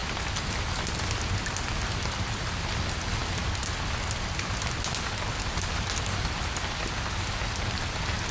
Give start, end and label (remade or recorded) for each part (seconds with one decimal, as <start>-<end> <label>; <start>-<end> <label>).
0.0-8.3 recorded